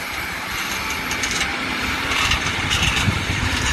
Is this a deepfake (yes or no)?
yes